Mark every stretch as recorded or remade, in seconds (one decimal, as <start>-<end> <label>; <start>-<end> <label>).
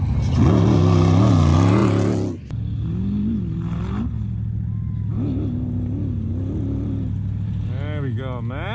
0.0-8.7 recorded